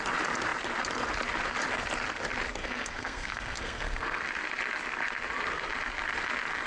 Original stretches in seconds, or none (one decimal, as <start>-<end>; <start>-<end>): 0.0-2.6; 4.2-6.7

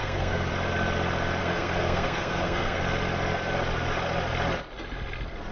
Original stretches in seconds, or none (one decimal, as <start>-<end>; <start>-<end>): 0.5-1.4; 2.8-5.5

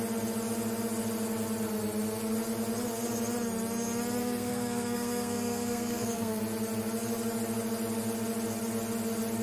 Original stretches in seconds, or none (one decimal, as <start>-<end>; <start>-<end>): 0.0-4.2; 6.4-9.4

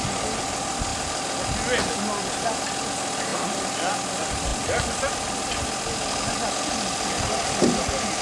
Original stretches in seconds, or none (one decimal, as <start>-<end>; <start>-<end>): 0.0-8.2

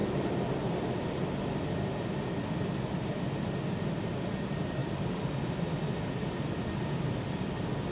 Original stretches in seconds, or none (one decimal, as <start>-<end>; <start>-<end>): 0.0-7.9

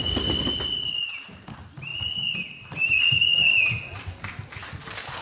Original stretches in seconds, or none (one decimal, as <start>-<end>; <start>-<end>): 0.0-5.2

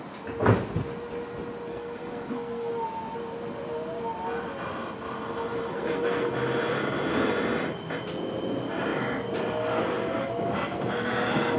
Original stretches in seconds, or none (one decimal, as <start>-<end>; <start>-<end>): 0.0-1.7; 2.7-5.7; 6.3-11.6